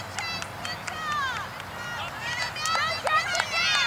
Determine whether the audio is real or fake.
real